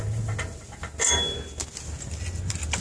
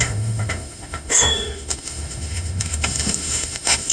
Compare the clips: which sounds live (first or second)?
first